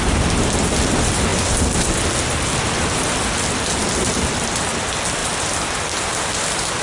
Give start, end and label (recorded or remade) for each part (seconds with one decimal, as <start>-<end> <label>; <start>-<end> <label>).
0.0-3.8 recorded; 3.8-4.7 remade; 4.7-5.2 recorded; 5.2-6.8 remade

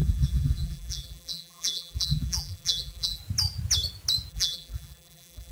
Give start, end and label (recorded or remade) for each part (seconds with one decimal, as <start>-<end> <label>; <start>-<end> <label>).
0.0-3.2 remade; 3.2-4.3 recorded; 4.3-5.5 remade

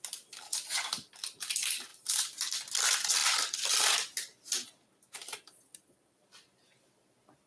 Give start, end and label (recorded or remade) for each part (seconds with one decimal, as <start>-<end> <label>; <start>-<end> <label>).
0.0-1.9 recorded; 1.9-2.6 remade; 2.6-7.5 recorded

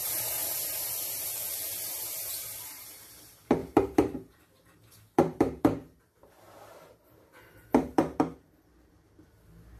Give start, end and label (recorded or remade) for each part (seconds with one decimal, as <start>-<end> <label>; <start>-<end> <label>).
0.0-0.4 remade; 0.4-2.6 recorded; 2.6-9.8 remade

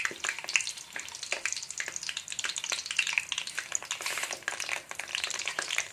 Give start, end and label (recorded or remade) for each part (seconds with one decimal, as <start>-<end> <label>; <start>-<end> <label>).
0.0-5.1 recorded; 5.1-5.9 remade